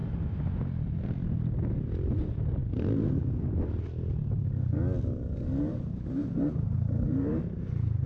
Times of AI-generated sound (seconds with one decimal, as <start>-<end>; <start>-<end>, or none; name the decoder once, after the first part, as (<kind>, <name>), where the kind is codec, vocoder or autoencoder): 2.1-2.6 (vocoder, BigVGAN v2); 5.6-8.1